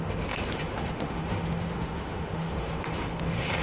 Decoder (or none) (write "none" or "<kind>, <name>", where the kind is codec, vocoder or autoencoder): autoencoder, DAC-VAE